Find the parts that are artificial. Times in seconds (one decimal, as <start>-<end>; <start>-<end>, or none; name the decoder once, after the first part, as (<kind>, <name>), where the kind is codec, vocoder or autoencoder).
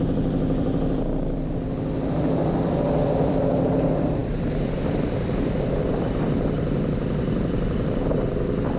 0.0-8.8 (vocoder, BigVGAN v2)